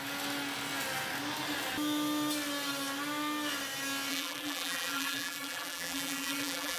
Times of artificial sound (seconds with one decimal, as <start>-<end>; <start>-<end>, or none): 4.1-6.8